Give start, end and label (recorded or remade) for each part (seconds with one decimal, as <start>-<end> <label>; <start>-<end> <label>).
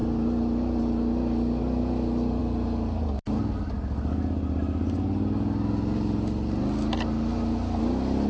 0.0-8.3 recorded